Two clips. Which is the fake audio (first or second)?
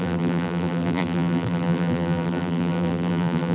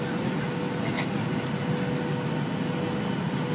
first